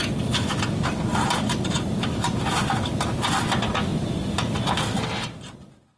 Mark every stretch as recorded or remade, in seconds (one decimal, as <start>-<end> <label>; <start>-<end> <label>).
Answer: 0.0-1.1 recorded; 1.1-2.7 remade; 2.7-6.0 recorded